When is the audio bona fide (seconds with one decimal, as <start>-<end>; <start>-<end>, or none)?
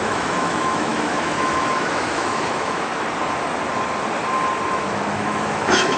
2.9-4.7